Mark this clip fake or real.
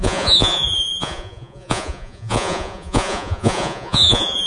fake